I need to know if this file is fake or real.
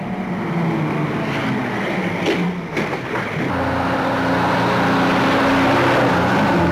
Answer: real